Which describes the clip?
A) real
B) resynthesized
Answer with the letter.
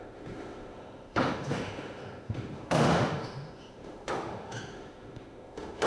B